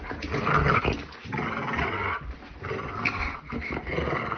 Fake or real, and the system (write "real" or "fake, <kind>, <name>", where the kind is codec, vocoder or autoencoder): real